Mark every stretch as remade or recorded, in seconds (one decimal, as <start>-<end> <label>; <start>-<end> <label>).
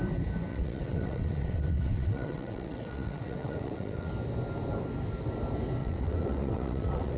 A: 0.0-0.5 recorded; 0.5-4.1 remade; 4.1-5.8 recorded; 5.8-7.2 remade